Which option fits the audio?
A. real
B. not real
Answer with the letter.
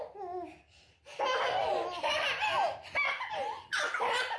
A